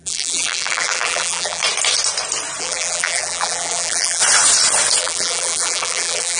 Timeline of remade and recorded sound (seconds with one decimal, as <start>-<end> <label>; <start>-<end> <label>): 0.0-1.6 remade; 1.6-2.6 recorded; 2.6-4.2 remade; 4.2-5.0 recorded; 5.0-6.4 remade